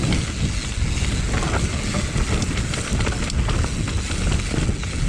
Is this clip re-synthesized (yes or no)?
no